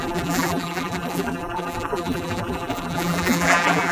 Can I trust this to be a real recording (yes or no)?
no